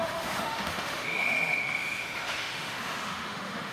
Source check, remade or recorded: remade